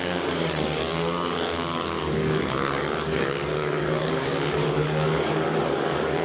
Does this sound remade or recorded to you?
remade